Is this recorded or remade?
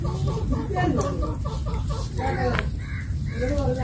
recorded